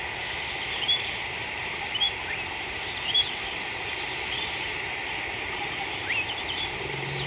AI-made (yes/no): yes